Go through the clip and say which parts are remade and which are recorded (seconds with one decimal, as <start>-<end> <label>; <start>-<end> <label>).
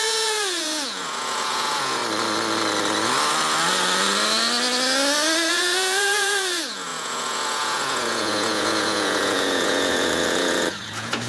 0.0-2.0 remade; 2.0-5.5 recorded; 5.5-11.3 remade